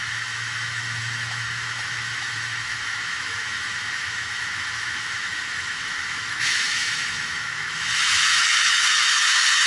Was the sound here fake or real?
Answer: fake